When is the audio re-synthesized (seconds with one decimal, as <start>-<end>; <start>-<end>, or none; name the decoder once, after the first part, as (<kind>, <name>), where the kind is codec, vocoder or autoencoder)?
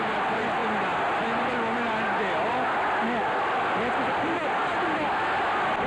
none